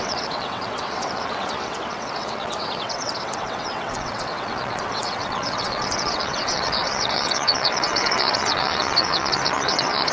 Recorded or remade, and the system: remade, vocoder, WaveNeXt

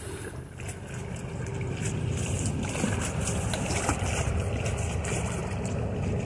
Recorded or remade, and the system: recorded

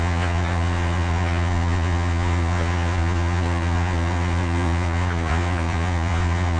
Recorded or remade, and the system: remade, vocoder, Vocos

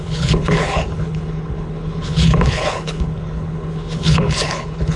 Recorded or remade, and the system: remade, codec, HILCodec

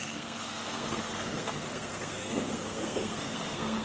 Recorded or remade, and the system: remade, codec, SNAC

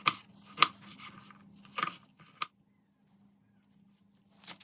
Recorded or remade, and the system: recorded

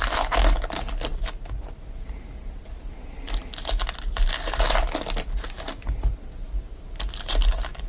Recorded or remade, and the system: recorded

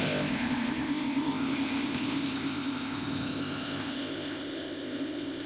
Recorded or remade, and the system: remade, codec, ZipCodec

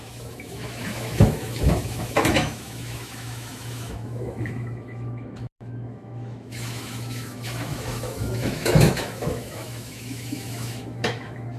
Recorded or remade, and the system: remade, autoencoder, DAC-VAE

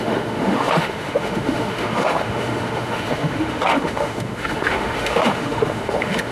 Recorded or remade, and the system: remade, autoencoder, DAC-VAE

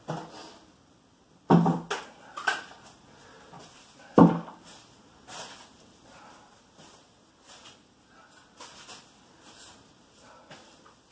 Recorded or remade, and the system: recorded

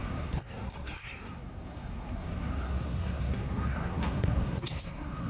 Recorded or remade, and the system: remade, codec, SNAC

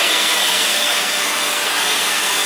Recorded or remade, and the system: remade, codec, SNAC